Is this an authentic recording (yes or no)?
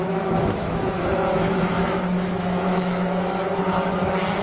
no